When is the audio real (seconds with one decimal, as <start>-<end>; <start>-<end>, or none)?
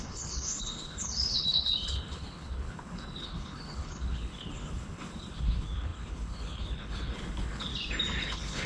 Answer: 7.7-8.2